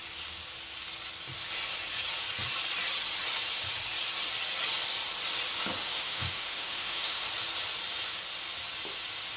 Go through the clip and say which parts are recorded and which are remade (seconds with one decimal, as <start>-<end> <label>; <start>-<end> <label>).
0.0-5.8 recorded; 5.8-7.2 remade; 7.2-9.4 recorded